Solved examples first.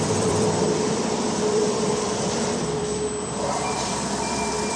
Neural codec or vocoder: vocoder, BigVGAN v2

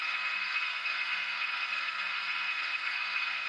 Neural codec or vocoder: codec, SNAC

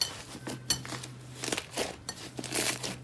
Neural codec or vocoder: none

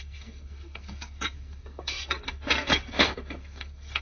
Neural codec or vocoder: codec, SNAC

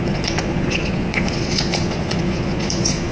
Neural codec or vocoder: vocoder, Vocos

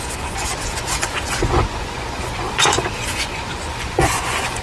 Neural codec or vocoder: vocoder, Vocos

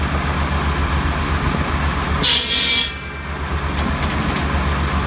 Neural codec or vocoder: none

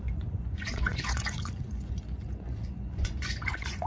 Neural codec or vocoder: vocoder, Vocos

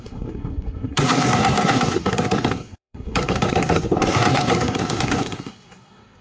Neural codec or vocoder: codec, SNAC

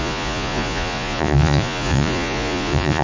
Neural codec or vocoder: vocoder, Vocos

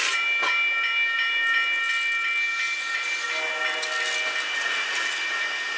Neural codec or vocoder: none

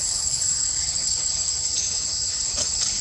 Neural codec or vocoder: codec, HILCodec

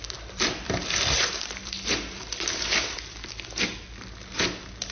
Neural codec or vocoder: vocoder, BigVGAN v2